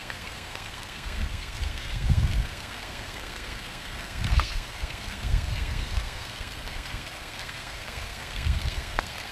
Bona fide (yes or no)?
no